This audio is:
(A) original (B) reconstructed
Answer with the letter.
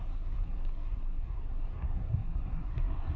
B